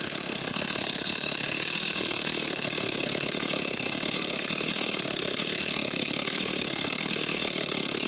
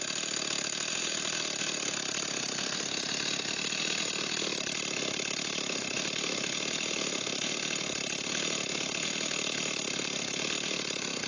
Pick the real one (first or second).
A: second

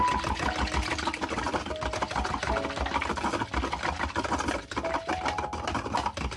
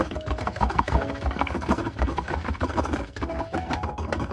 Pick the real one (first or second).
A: first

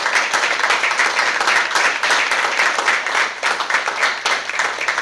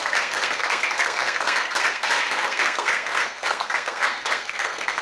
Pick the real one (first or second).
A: first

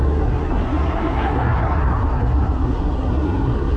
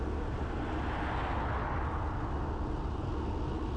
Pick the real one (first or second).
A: second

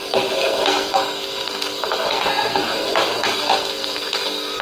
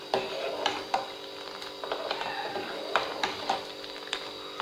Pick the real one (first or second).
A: second